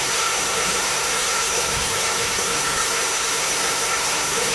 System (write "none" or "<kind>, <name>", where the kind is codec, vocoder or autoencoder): codec, SNAC